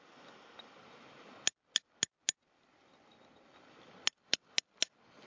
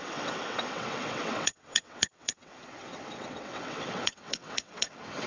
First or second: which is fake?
second